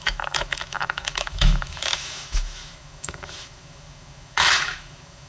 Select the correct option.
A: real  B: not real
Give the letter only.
B